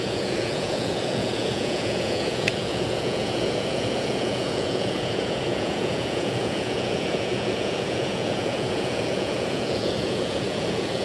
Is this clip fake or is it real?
fake